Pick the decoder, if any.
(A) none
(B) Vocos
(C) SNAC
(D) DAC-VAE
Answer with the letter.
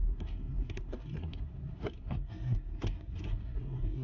C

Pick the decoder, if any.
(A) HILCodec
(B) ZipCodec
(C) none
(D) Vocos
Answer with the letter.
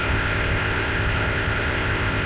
B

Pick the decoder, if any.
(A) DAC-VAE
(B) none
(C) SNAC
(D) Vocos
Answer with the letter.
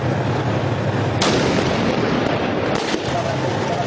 B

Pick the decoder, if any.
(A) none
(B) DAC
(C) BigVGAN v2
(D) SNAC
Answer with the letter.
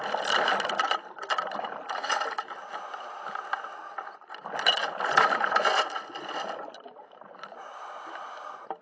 A